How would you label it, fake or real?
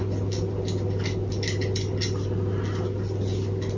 real